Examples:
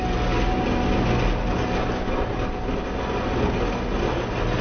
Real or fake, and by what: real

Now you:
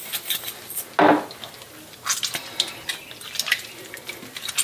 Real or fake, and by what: real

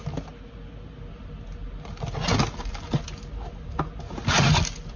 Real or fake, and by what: real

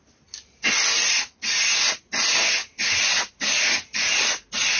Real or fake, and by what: real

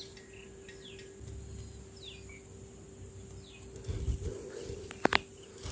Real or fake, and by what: real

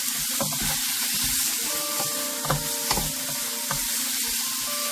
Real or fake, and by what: real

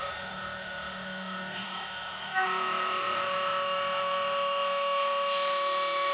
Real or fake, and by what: fake, autoencoder, DAC-VAE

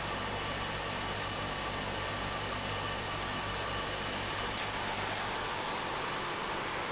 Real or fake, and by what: real